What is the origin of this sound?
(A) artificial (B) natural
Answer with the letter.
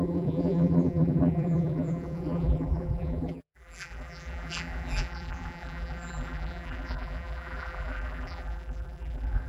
A